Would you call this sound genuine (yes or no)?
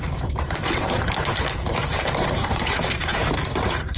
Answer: no